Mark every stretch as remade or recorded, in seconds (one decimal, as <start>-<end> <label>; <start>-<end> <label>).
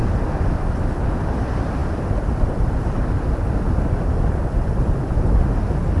0.0-6.0 recorded